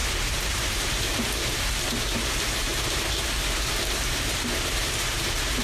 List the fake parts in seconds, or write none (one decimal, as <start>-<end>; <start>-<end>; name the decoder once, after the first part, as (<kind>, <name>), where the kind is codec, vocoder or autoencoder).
0.0-1.7 (vocoder, BigVGAN v2); 2.7-5.6